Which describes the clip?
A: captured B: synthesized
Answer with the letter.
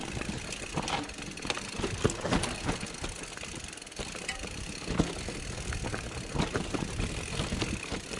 A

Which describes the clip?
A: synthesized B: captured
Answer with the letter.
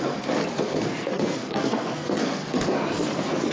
A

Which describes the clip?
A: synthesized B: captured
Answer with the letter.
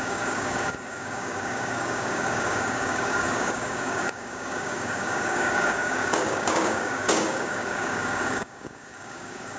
A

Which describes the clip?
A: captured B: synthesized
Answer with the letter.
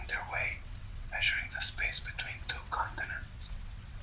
B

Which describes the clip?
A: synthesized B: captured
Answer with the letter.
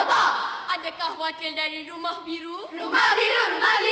A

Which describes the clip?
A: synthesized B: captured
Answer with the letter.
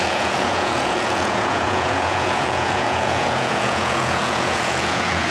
A